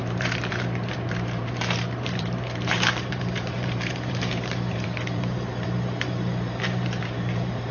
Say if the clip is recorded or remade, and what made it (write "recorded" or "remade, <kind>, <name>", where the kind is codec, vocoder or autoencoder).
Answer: remade, vocoder, BigVGAN v2